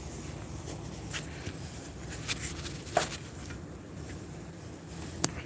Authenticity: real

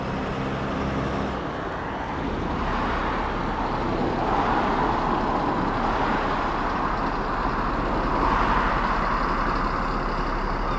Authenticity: real